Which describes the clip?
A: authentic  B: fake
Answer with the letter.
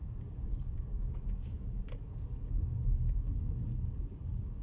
B